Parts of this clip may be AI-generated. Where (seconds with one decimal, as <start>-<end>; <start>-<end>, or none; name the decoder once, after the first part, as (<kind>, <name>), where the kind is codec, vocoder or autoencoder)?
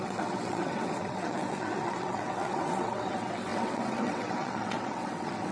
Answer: 0.0-5.5 (vocoder, WaveNeXt)